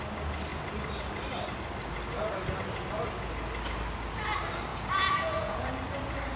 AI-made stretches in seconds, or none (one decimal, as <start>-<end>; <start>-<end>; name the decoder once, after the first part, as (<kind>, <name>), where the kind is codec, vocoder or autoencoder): 4.7-5.7 (vocoder, Vocos)